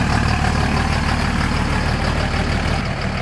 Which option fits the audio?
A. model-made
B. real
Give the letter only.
B